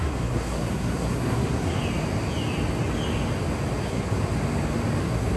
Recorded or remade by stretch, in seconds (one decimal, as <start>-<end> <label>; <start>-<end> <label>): 0.0-1.8 remade; 1.8-3.8 recorded; 3.8-4.2 remade; 4.2-5.0 recorded; 5.0-5.4 remade